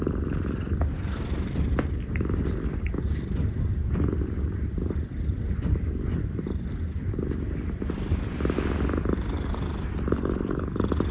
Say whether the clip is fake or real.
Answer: real